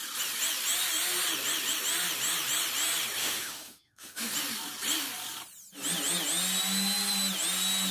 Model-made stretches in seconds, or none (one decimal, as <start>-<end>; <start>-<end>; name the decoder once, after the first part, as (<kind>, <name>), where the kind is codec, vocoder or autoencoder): 3.2-4.3 (autoencoder, DAC-VAE)